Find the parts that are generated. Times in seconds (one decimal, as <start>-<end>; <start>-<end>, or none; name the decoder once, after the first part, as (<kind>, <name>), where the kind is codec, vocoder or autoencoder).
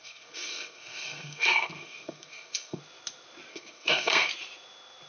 0.0-2.8 (codec, SNAC); 3.5-4.3